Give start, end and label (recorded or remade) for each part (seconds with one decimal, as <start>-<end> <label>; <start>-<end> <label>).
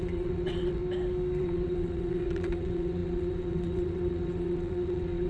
0.0-0.8 remade; 0.8-1.4 recorded; 1.4-5.3 remade